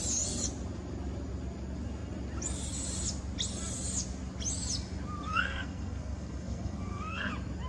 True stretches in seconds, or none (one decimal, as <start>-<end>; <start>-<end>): 0.0-5.2; 7.3-7.7